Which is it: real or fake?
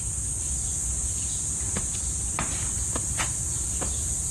fake